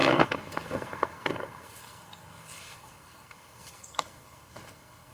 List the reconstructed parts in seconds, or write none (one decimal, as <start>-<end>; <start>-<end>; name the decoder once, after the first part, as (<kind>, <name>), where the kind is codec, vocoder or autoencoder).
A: 0.0-5.1 (codec, SNAC)